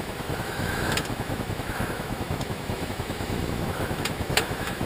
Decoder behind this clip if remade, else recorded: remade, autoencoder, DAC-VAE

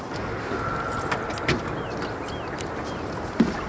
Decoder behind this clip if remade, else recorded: recorded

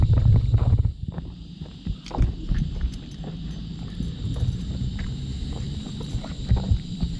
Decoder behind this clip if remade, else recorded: remade, vocoder, BigVGAN v2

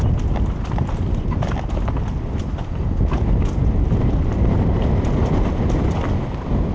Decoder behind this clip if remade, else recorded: recorded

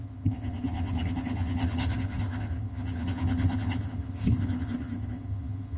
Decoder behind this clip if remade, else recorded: remade, vocoder, HiFi-GAN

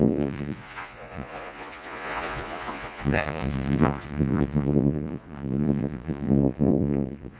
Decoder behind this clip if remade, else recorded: remade, vocoder, Vocos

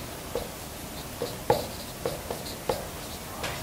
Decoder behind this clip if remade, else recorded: recorded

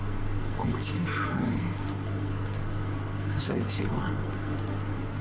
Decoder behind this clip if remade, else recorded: remade, codec, SNAC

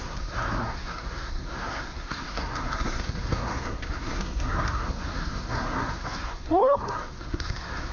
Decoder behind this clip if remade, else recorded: remade, codec, SNAC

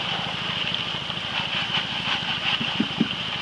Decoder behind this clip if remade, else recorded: recorded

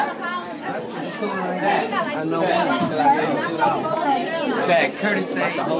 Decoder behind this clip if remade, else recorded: recorded